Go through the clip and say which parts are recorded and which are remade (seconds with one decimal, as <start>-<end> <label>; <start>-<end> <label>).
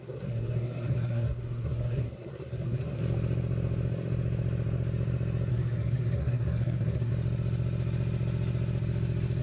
0.0-3.0 remade; 3.0-5.5 recorded; 5.5-7.1 remade; 7.1-9.4 recorded